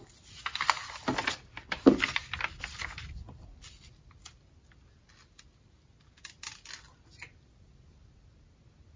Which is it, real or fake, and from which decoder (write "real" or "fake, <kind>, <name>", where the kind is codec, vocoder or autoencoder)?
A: real